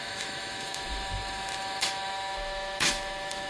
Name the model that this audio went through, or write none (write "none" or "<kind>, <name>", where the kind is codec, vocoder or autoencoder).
autoencoder, DAC-VAE